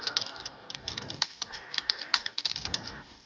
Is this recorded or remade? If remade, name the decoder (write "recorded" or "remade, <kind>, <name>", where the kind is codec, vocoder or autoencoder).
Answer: remade, codec, DAC